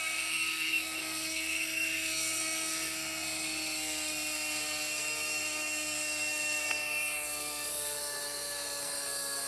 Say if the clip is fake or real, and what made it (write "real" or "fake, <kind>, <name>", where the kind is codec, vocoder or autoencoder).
fake, codec, SNAC